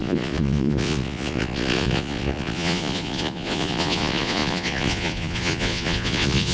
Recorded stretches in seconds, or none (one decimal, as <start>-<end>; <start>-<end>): none